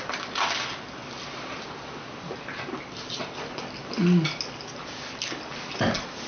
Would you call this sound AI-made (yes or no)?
no